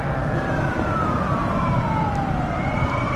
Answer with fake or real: fake